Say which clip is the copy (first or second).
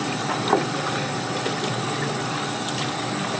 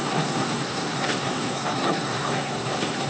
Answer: second